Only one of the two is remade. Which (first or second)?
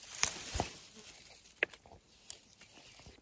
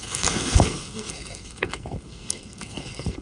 second